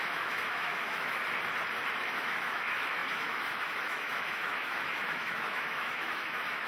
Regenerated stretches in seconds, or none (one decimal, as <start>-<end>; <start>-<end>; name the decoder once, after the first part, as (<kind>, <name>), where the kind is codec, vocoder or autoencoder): 0.0-1.2 (autoencoder, DAC-VAE); 2.0-6.7